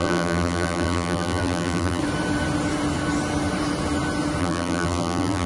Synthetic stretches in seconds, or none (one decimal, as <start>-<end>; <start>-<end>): 0.0-2.0; 4.4-5.5